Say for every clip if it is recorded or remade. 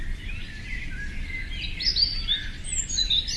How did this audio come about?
recorded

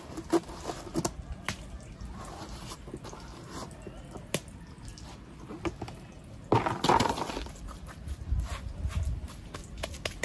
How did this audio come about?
recorded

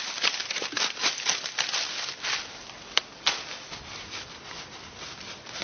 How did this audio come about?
recorded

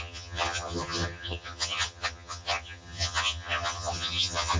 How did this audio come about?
remade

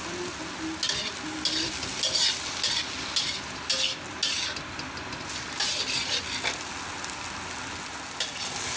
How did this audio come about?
recorded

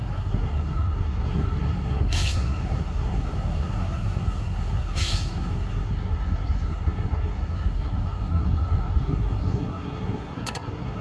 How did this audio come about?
remade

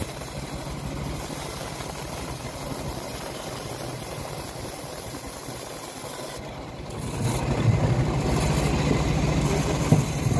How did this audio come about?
recorded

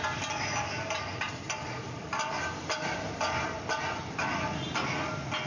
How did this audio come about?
recorded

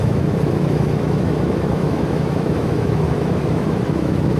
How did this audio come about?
remade